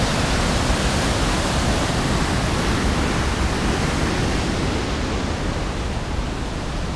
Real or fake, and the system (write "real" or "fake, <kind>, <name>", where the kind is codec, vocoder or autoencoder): real